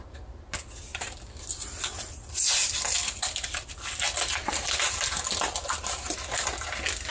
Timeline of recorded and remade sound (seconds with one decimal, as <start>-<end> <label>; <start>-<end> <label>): 0.0-7.1 recorded